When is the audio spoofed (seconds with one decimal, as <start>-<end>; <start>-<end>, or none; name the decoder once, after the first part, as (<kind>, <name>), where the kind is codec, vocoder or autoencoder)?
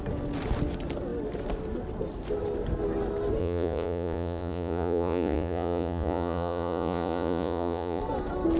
3.4-8.0 (vocoder, Vocos)